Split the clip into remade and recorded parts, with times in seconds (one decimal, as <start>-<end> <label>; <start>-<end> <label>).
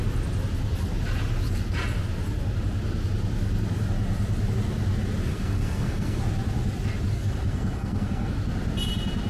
0.0-5.3 recorded; 5.3-6.2 remade; 6.2-7.1 recorded; 7.1-8.3 remade; 8.3-9.3 recorded